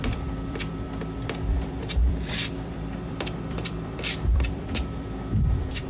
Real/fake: fake